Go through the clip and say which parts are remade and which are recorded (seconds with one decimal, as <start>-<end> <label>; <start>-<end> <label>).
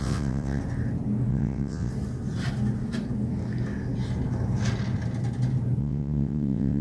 0.0-0.6 remade; 0.6-1.3 recorded; 1.3-1.9 remade; 1.9-5.8 recorded; 5.8-6.8 remade